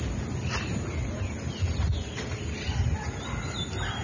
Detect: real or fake real